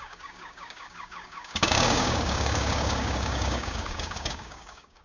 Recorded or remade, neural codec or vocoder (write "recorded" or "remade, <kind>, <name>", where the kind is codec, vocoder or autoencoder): remade, codec, DAC